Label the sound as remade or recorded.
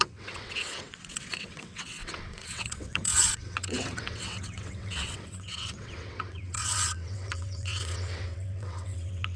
remade